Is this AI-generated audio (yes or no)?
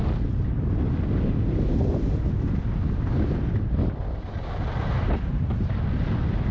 no